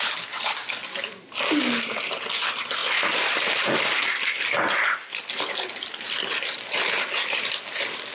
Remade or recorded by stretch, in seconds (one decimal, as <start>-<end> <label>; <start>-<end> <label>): 0.0-8.1 recorded